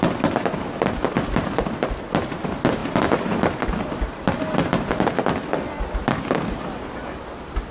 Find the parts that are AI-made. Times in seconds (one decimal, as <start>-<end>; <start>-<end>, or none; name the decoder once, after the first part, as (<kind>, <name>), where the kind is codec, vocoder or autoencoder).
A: none